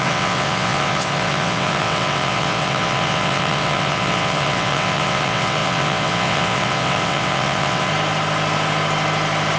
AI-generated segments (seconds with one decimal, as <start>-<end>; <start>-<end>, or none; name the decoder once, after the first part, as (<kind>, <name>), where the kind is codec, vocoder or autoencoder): 0.0-7.9 (vocoder, WaveNeXt)